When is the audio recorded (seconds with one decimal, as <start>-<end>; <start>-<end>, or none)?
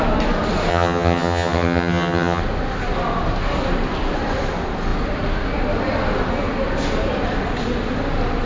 0.0-0.7; 2.4-8.5